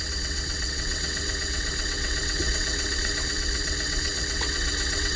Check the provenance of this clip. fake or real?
fake